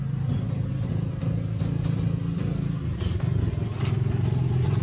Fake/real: real